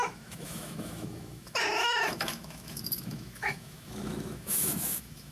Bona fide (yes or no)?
no